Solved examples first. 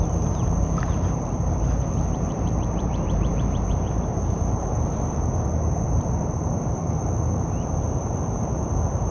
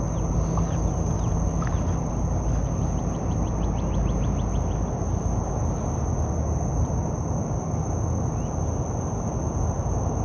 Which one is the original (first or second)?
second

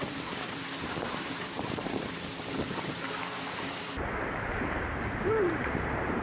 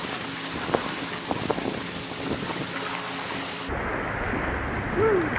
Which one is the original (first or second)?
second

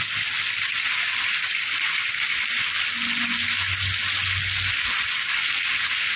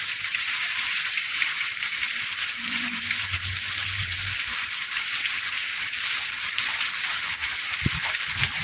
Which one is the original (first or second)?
first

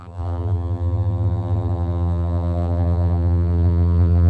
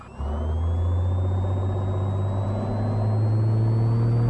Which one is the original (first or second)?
second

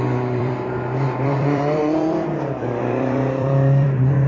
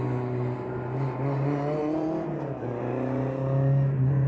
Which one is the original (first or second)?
second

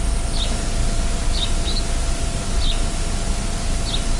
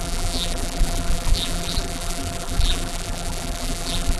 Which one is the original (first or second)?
first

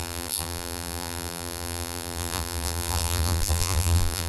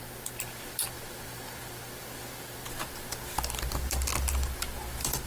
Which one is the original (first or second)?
second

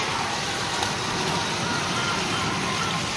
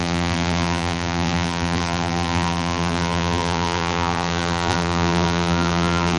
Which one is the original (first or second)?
first